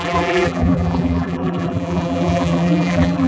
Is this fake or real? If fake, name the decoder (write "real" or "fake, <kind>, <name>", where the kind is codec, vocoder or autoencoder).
fake, vocoder, BigVGAN v2